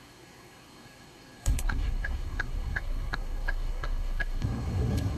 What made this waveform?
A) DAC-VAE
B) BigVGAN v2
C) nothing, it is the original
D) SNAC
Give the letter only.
D